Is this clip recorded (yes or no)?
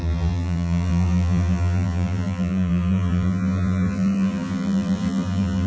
no